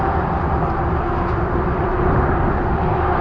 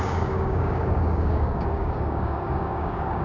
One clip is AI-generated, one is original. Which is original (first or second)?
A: first